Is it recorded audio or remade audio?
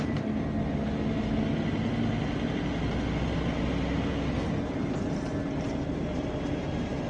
recorded